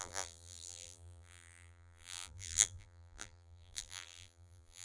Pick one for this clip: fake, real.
fake